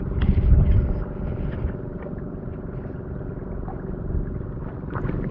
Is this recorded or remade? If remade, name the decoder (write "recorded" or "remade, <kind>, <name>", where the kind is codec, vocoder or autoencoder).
recorded